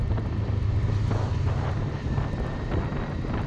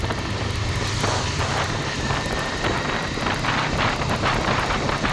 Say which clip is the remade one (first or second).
second